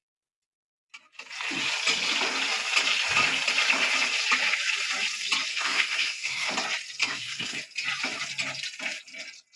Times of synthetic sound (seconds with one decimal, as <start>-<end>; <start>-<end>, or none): 5.5-6.5; 7.0-7.6